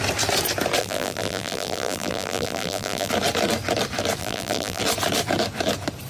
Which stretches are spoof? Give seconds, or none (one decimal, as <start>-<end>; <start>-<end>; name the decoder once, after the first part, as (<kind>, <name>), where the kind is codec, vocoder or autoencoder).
0.8-3.1 (vocoder, BigVGAN v2); 4.2-4.8